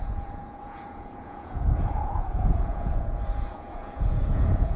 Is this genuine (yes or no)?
no